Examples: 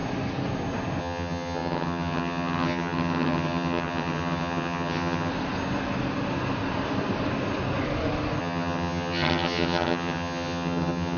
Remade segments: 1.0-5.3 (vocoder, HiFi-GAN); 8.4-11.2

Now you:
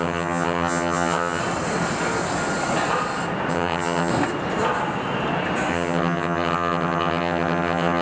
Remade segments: 0.0-1.4 (vocoder, HiFi-GAN); 3.5-4.1; 5.7-8.0

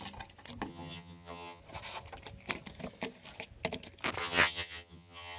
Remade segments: 0.7-1.6 (vocoder, HiFi-GAN); 4.2-5.4

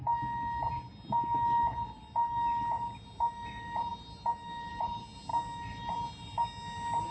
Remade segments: none